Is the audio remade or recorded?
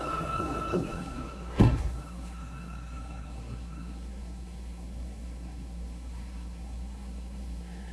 remade